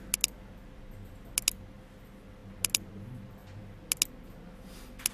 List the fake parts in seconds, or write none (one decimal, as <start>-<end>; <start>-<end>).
none

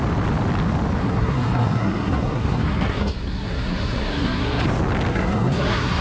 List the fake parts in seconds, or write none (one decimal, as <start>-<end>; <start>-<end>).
1.0-4.6; 5.1-6.0

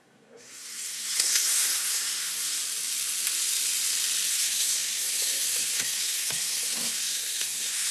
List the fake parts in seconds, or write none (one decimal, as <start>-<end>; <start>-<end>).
0.0-2.6; 4.3-7.9